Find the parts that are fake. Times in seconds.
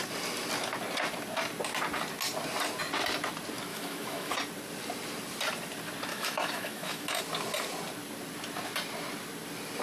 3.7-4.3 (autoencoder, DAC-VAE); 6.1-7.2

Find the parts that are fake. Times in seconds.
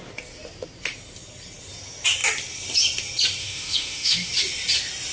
3.4-4.3 (autoencoder, DAC-VAE)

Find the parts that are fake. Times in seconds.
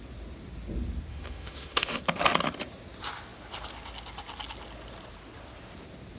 1.1-2.0 (autoencoder, DAC-VAE)